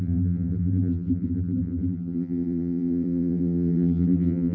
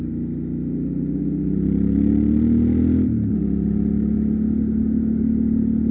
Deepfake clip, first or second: first